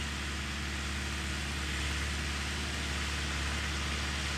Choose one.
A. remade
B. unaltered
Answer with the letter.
B